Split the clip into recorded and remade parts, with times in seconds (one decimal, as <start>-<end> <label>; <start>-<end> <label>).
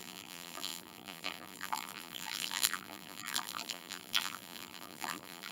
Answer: 0.0-5.5 remade